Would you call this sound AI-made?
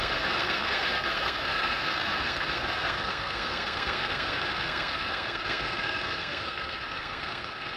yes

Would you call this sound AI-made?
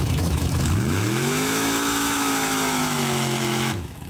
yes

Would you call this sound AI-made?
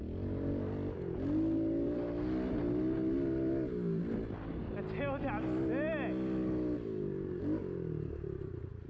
no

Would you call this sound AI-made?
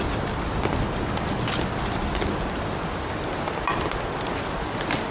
no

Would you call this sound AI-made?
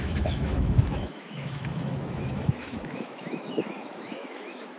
yes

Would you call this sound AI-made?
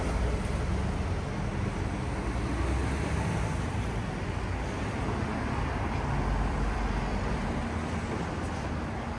no